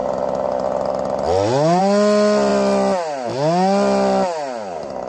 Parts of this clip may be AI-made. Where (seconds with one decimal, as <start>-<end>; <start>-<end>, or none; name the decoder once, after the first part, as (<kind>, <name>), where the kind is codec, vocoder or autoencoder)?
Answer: none